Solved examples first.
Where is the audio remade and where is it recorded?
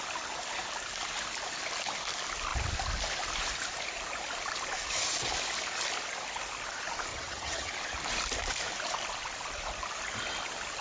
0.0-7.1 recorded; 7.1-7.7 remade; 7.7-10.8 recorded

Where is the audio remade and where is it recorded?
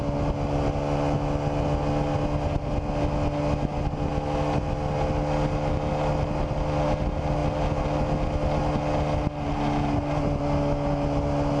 0.0-11.6 recorded